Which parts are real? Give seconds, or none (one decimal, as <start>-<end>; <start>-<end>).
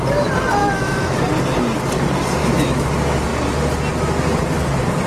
0.0-0.6; 1.2-2.4; 2.9-5.1